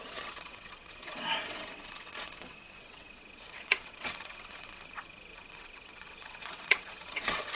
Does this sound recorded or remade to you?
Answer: remade